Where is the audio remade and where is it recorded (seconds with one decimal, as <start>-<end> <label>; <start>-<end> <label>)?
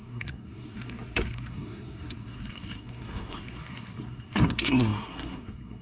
0.0-5.8 remade